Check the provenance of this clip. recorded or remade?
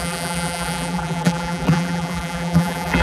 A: remade